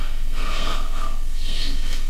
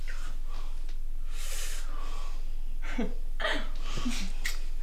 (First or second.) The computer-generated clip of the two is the first